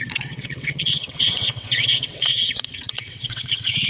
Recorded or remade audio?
remade